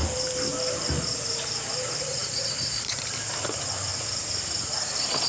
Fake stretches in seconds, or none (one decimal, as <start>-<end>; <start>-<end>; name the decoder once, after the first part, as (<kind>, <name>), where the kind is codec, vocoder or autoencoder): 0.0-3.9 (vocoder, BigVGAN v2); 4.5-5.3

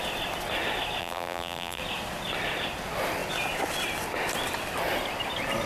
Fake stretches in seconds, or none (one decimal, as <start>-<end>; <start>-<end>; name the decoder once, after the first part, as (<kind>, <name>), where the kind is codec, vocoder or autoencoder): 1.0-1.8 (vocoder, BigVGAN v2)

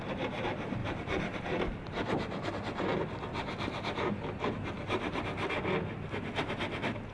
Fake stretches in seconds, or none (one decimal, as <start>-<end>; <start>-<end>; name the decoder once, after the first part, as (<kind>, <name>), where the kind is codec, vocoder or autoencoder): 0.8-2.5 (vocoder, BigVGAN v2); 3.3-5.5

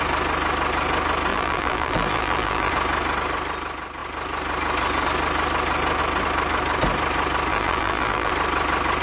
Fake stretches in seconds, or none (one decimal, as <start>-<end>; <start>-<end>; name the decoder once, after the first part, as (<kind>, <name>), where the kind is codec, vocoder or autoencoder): 1.3-2.7 (vocoder, BigVGAN v2); 7.5-8.3

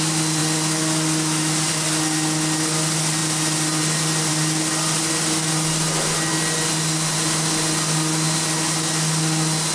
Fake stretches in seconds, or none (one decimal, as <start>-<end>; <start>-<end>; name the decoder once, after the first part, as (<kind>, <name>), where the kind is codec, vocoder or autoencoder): none

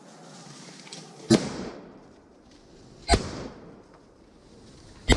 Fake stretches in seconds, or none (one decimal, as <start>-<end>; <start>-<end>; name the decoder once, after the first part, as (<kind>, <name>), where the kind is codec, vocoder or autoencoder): 0.9-2.6 (vocoder, BigVGAN v2); 3.1-3.8